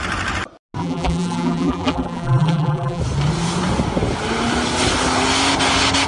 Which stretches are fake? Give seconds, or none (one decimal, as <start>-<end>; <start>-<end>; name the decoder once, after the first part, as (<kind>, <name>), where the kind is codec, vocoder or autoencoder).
0.8-3.0 (vocoder, BigVGAN v2)

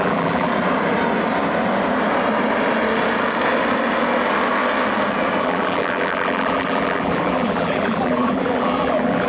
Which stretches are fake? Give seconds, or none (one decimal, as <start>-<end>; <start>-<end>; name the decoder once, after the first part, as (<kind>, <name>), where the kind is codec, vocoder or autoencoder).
0.0-0.5 (vocoder, BigVGAN v2); 5.4-9.3